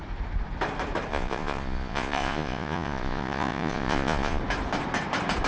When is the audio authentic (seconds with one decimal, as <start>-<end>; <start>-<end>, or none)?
0.0-1.1; 4.4-5.5